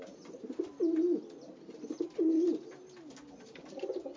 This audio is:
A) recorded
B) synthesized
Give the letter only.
A